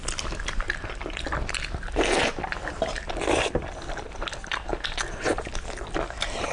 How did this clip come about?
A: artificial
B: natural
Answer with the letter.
B